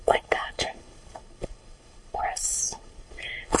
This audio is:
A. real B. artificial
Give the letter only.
B